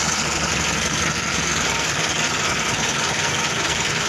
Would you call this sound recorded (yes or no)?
no